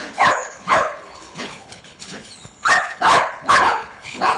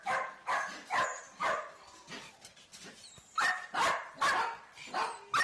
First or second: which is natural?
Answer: second